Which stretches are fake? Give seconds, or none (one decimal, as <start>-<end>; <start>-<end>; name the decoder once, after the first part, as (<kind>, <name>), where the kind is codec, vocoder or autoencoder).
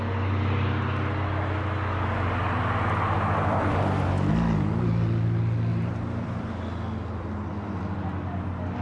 5.7-6.5 (vocoder, BigVGAN v2)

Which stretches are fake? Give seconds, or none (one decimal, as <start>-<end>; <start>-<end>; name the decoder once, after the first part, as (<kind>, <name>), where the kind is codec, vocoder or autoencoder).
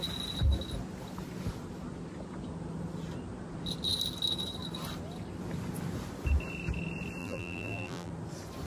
7.2-8.1 (vocoder, BigVGAN v2)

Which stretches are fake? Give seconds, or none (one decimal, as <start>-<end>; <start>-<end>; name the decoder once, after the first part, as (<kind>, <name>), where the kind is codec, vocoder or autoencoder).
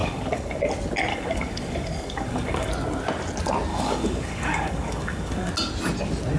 0.0-0.6 (codec, DAC); 1.1-2.7; 3.7-5.5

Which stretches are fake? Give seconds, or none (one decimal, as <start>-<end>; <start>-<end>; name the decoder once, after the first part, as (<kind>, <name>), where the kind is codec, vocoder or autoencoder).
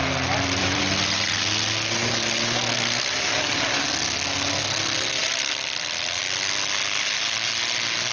0.0-0.8 (vocoder, BigVGAN v2); 5.2-6.2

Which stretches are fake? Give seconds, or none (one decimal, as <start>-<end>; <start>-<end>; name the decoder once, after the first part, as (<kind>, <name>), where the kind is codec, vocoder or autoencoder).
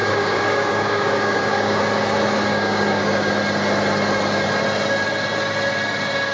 0.0-1.8 (codec, DAC); 2.5-3.3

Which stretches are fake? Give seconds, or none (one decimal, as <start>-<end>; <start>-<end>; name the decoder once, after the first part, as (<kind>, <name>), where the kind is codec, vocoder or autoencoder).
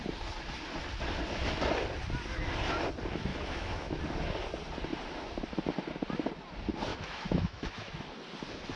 3.3-4.0 (autoencoder, DAC-VAE); 6.9-8.1